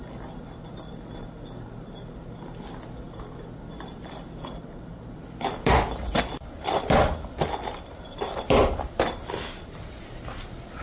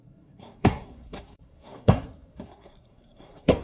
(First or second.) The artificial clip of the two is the second